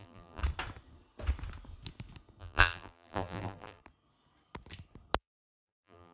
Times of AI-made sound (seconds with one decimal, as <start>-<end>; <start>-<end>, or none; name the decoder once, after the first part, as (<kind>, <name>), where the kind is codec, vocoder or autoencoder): 0.0-0.4 (vocoder, BigVGAN v2); 2.4-3.8; 5.2-6.1